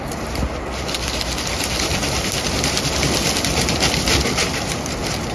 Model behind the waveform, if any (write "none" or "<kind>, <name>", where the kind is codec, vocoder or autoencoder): none